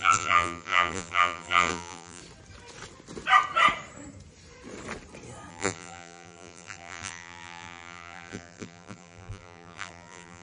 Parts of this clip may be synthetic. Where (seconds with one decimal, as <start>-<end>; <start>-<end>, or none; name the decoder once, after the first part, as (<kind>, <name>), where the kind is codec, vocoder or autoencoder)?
0.0-2.2 (vocoder, BigVGAN v2); 5.5-10.4